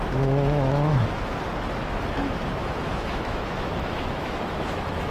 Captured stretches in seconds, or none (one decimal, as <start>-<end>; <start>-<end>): 1.3-1.9